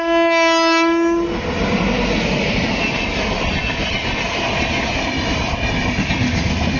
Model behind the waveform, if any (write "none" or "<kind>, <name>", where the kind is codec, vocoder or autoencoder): none